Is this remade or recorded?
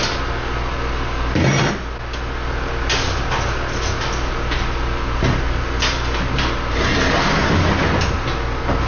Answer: recorded